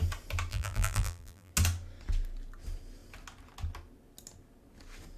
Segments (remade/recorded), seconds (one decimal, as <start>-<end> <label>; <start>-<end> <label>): 0.0-0.5 recorded; 0.5-1.5 remade; 1.5-5.2 recorded